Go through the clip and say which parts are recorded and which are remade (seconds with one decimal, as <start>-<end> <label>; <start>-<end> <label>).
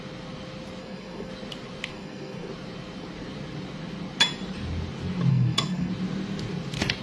0.0-0.8 recorded; 0.8-1.3 remade; 1.3-1.9 recorded; 1.9-2.5 remade; 2.5-5.3 recorded; 5.3-5.9 remade; 5.9-7.0 recorded